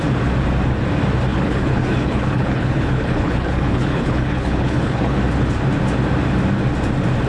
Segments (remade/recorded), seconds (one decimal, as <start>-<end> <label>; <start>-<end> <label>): 0.0-1.3 recorded; 1.3-5.2 remade; 5.2-7.3 recorded